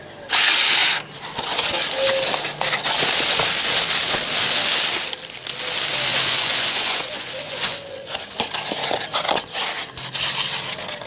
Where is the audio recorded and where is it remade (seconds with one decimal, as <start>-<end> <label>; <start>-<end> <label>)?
0.0-6.1 recorded; 6.1-8.3 remade; 8.3-11.1 recorded